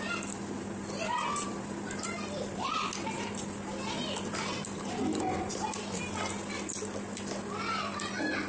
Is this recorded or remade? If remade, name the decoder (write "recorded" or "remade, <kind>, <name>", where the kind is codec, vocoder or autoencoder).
recorded